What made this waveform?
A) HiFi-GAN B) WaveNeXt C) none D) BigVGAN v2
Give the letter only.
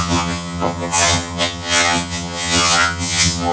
A